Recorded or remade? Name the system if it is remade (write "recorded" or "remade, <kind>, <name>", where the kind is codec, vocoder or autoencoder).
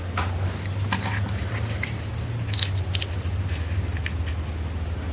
recorded